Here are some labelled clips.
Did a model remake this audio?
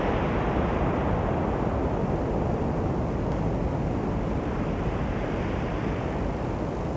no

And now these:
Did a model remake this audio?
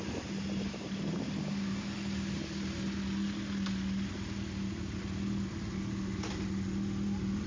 no